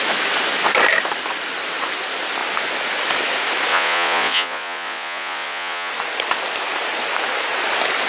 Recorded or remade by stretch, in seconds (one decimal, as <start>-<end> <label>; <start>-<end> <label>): 0.0-3.7 recorded; 3.7-5.9 remade; 5.9-8.1 recorded